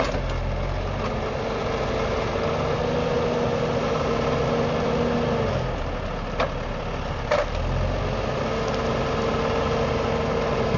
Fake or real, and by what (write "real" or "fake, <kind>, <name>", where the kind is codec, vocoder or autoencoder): real